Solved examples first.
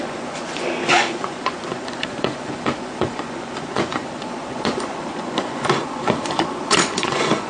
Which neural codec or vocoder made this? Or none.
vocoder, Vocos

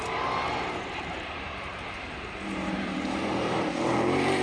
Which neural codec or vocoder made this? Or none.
vocoder, BigVGAN v2